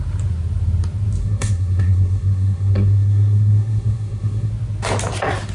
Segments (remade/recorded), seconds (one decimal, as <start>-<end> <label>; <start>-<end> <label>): 0.0-1.2 recorded; 1.2-4.5 remade; 4.5-5.5 recorded

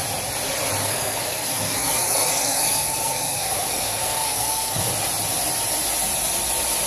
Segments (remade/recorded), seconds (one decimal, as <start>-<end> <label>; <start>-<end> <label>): 0.0-0.8 recorded; 0.8-4.9 remade; 4.9-6.9 recorded

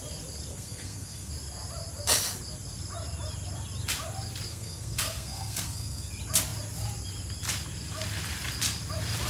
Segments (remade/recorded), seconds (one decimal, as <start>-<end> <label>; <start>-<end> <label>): 0.0-0.5 recorded; 0.5-1.3 remade; 1.3-4.5 recorded; 4.5-6.1 remade; 6.1-9.3 recorded

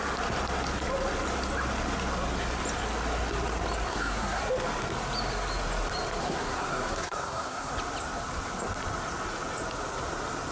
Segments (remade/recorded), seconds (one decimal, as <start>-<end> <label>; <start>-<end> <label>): 0.0-3.9 recorded; 3.9-4.4 remade; 4.4-6.2 recorded; 6.2-7.7 remade; 7.7-10.5 recorded

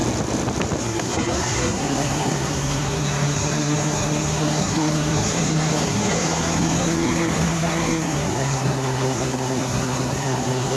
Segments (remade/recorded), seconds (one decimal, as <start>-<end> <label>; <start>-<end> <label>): 0.0-0.8 recorded; 0.8-10.8 remade